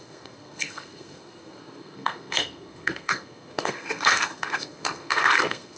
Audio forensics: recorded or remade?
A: remade